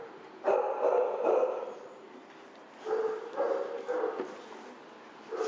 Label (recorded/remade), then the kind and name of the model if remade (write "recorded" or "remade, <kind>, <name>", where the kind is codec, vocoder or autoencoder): recorded